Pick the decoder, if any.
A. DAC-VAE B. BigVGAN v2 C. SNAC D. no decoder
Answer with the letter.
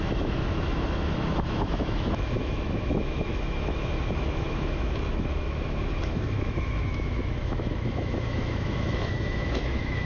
A